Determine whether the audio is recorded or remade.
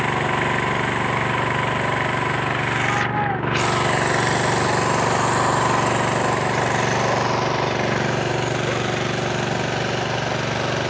recorded